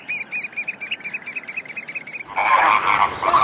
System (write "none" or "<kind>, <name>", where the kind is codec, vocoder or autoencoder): none